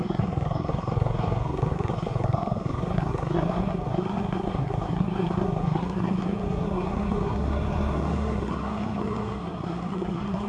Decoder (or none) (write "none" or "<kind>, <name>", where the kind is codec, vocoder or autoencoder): codec, SNAC